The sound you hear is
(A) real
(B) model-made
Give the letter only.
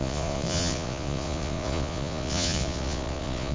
B